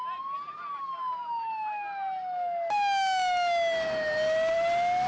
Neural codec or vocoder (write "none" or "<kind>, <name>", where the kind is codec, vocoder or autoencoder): none